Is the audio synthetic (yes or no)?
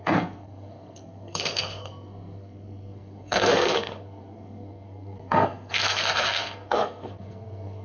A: yes